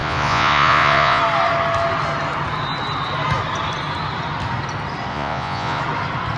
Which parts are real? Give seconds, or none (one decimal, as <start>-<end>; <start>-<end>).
1.2-5.1; 5.8-6.4